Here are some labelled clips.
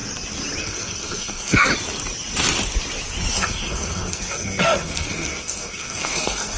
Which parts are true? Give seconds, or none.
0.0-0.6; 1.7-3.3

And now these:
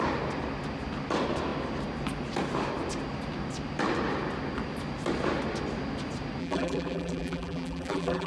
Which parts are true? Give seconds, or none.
0.0-6.4

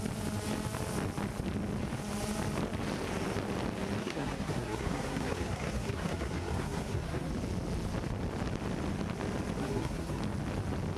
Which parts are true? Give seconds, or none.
0.0-4.0; 7.3-9.6; 10.2-11.0